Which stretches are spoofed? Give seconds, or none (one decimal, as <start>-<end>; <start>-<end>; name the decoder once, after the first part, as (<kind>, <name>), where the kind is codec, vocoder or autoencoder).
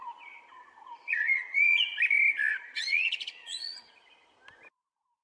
0.0-2.0 (vocoder, Vocos); 2.5-3.9